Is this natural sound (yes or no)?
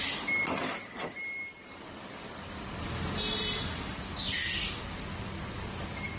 yes